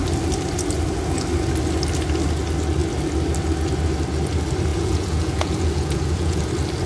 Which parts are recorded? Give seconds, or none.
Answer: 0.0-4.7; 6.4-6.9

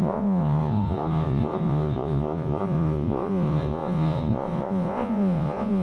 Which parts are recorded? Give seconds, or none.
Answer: none

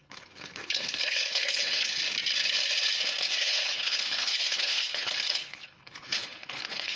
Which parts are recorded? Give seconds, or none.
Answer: 2.0-3.2

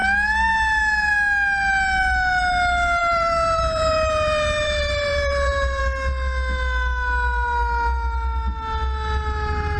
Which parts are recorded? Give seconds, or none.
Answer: 0.0-3.0; 5.8-9.8

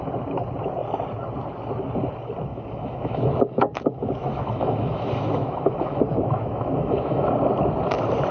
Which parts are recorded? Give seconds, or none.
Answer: 0.0-2.5; 7.3-8.3

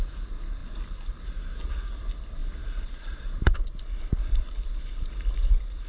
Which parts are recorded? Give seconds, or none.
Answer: 0.0-0.6; 1.6-2.4; 3.8-5.9